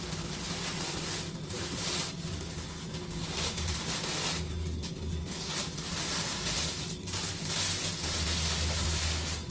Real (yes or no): yes